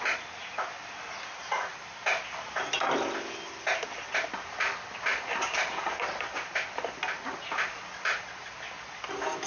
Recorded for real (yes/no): yes